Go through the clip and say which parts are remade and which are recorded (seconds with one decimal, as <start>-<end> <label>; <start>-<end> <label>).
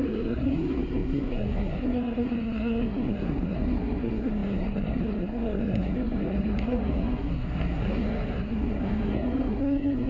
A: 0.0-10.1 remade